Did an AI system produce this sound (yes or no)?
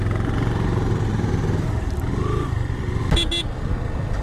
no